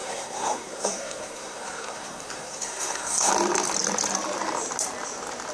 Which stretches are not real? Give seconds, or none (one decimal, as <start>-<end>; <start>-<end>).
0.0-3.3